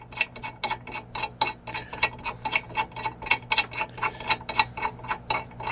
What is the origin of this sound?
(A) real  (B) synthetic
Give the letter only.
A